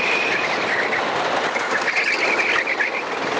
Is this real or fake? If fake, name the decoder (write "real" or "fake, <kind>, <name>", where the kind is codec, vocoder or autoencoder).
real